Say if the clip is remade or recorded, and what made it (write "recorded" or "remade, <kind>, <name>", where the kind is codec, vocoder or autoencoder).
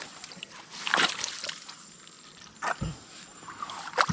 recorded